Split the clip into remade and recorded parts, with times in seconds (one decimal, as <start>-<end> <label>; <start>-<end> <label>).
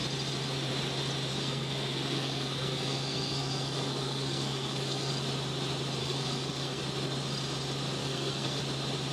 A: 0.0-1.3 recorded; 1.3-5.1 remade; 5.1-6.0 recorded; 6.0-6.8 remade; 6.8-8.0 recorded; 8.0-8.6 remade; 8.6-9.1 recorded